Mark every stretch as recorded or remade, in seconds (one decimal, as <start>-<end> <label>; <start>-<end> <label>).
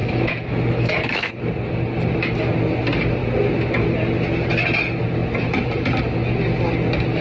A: 0.0-1.3 remade; 1.3-7.2 recorded